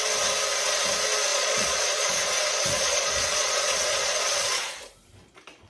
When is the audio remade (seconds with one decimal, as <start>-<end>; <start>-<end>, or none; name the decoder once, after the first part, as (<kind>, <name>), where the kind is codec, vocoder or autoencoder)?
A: 1.3-4.7 (vocoder, Vocos)